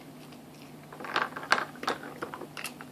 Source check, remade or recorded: recorded